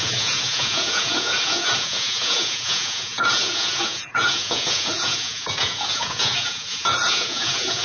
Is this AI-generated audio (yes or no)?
yes